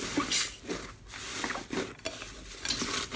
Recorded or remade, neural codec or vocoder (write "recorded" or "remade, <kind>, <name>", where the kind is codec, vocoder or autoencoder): recorded